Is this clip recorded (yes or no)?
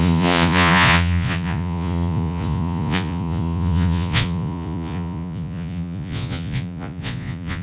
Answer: no